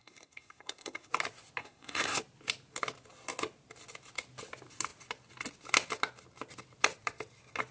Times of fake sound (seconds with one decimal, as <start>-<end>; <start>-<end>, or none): 0.0-1.1; 1.6-2.2